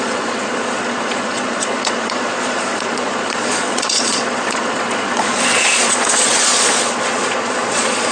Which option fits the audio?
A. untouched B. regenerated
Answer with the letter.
B